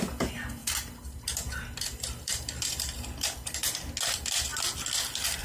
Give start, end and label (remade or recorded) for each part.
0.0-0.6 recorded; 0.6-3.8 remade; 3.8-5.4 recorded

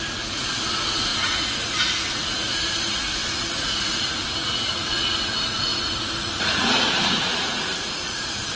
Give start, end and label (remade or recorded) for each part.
0.0-8.6 remade

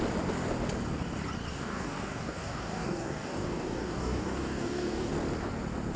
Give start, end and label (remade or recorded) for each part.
0.0-1.5 recorded; 1.5-5.1 remade; 5.1-6.0 recorded

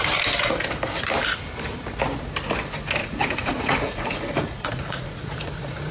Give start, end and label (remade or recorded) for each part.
0.0-3.0 recorded; 3.0-5.9 remade

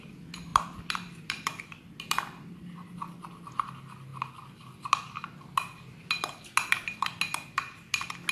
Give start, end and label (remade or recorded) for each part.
0.0-0.5 recorded; 0.5-2.0 remade; 2.0-8.3 recorded